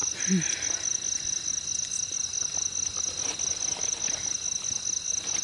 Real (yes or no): yes